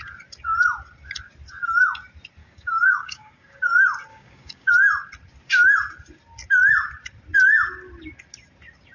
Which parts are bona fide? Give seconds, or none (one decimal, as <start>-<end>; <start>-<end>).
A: 0.0-2.4; 3.6-4.1; 4.7-8.9